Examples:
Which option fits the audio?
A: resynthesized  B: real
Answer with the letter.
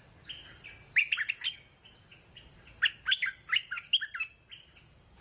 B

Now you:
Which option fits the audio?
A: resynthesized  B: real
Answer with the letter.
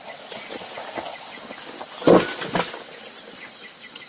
B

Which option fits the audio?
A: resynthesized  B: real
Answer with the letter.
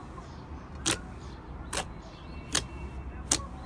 B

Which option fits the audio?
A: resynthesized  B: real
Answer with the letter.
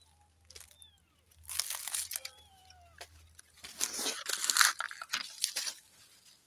B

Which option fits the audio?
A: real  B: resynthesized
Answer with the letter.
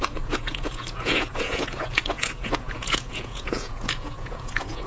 B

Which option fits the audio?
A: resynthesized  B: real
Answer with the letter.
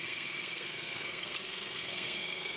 A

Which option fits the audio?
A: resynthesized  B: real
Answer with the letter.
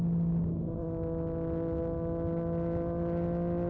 B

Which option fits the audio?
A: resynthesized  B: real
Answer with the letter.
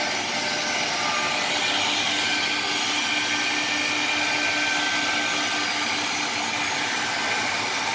B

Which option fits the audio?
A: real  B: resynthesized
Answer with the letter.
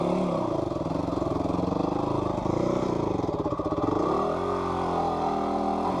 A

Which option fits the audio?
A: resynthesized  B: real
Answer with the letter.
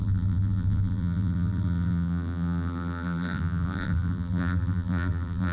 A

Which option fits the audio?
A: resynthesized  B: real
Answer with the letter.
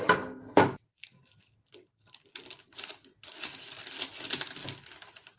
B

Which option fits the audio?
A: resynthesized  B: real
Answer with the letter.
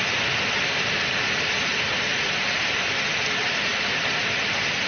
B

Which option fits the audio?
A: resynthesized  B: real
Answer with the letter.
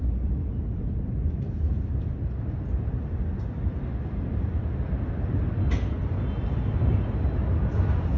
B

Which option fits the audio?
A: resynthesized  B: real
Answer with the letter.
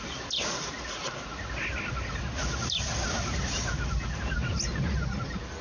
B